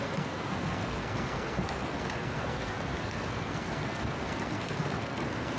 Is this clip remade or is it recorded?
remade